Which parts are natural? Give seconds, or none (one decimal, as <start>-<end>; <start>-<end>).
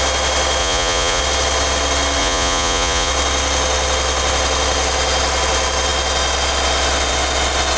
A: 0.0-0.6; 1.2-2.2; 3.1-7.8